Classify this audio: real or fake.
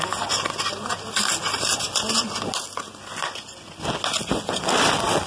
real